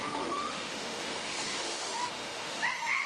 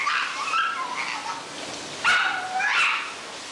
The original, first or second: second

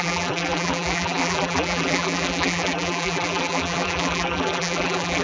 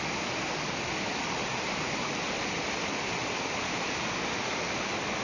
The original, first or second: second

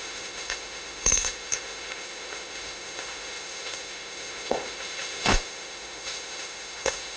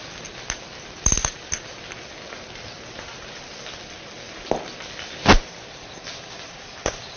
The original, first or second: second